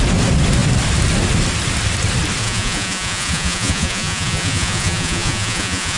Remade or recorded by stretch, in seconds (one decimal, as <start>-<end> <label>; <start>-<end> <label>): 0.0-2.4 recorded; 2.4-6.0 remade